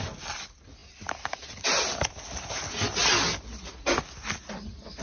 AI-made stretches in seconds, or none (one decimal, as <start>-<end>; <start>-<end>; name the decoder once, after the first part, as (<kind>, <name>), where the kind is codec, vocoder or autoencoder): none